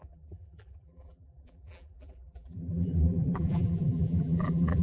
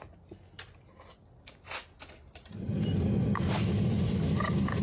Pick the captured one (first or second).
second